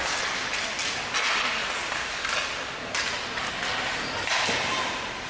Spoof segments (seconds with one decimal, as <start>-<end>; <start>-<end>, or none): none